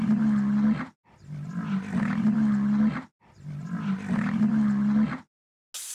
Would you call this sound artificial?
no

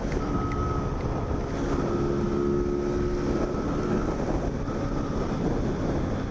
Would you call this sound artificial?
no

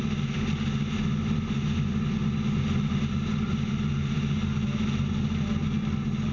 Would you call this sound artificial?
no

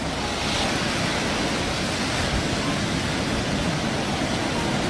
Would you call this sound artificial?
no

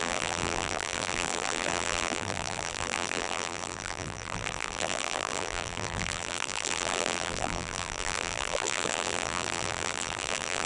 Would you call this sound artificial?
yes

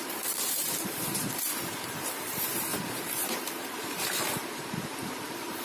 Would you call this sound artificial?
yes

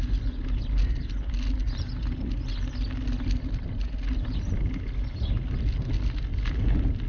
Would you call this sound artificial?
no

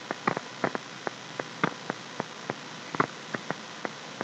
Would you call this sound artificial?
no